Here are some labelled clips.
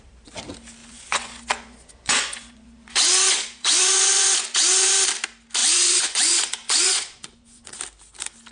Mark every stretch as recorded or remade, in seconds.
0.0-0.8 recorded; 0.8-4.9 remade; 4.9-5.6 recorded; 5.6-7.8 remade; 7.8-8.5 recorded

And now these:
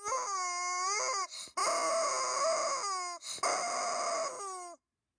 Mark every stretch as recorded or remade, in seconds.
0.0-5.2 recorded

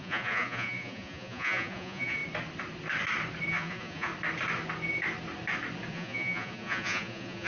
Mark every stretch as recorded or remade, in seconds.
0.0-2.2 remade; 2.2-3.5 recorded; 3.5-4.1 remade; 4.1-5.9 recorded; 5.9-7.5 remade